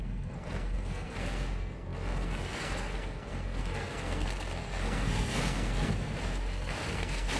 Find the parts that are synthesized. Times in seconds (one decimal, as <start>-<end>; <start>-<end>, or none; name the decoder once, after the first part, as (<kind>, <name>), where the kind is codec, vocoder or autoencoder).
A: 0.0-7.4 (codec, SNAC)